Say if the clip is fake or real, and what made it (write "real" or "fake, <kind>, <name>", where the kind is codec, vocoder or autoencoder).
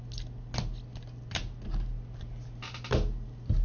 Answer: real